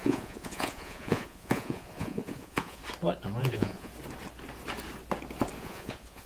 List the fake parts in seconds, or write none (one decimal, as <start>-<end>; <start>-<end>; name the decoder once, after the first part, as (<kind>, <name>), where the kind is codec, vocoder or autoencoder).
0.0-2.8 (vocoder, Vocos); 3.4-3.9; 5.6-6.3